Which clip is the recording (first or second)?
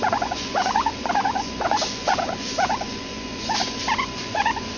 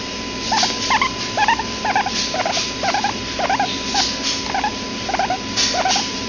second